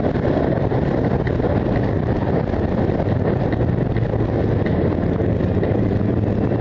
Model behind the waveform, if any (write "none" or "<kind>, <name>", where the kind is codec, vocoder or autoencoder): vocoder, BigVGAN v2